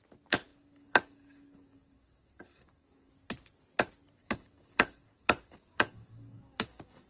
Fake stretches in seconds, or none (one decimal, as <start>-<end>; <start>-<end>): 0.5-3.1; 4.2-7.1